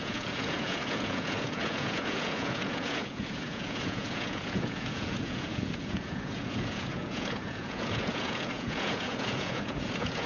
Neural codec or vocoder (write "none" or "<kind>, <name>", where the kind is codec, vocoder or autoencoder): vocoder, Vocos